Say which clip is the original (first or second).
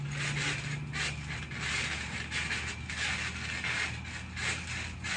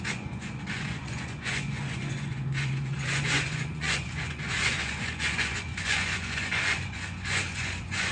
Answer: first